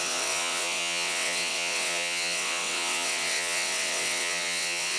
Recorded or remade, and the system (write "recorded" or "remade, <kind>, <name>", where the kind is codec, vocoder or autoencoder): remade, vocoder, WaveNeXt